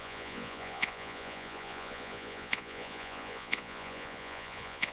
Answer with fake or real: fake